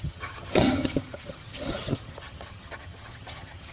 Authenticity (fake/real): fake